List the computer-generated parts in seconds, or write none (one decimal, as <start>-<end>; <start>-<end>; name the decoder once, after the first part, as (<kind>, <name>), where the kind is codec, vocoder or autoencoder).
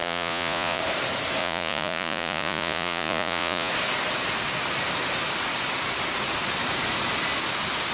0.0-0.8 (vocoder, Vocos); 1.4-3.7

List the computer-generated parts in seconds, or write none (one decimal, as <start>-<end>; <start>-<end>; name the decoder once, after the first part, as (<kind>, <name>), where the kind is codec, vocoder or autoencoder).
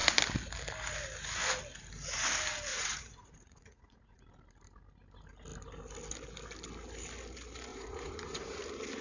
2.7-4.2 (vocoder, Vocos); 7.7-8.6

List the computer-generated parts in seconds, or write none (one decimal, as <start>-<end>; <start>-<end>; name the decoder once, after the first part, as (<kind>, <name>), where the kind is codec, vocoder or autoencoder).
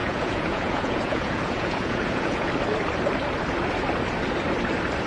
0.0-2.5 (vocoder, Vocos)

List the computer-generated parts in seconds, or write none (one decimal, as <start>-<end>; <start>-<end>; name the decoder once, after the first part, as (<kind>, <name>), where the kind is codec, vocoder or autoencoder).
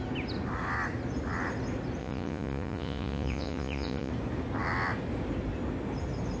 2.0-4.1 (vocoder, Vocos)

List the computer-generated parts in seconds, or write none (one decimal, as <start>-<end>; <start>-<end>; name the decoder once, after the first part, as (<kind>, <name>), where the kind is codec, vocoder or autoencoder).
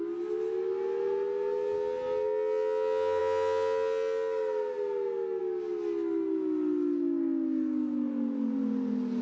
none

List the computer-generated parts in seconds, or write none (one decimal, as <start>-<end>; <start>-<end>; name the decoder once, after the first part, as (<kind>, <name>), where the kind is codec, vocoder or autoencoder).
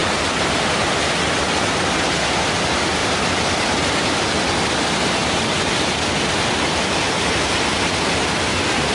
none